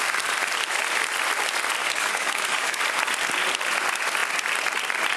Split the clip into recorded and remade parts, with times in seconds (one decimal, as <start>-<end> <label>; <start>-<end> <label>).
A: 0.0-1.8 recorded; 1.8-2.8 remade; 2.8-5.2 recorded